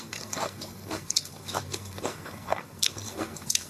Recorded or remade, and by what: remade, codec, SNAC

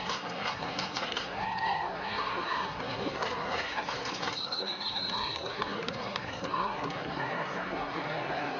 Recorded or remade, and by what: remade, codec, SNAC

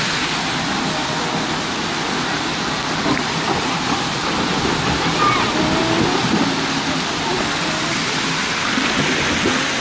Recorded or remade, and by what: recorded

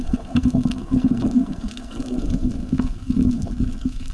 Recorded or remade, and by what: remade, codec, SNAC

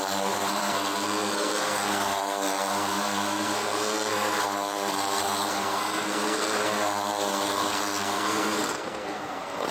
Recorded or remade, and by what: remade, codec, SNAC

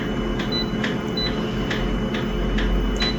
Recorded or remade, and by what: recorded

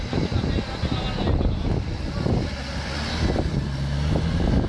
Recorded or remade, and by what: recorded